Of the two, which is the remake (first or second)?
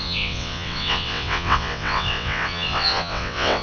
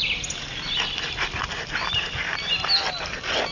first